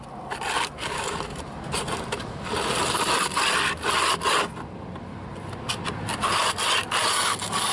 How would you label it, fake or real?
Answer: real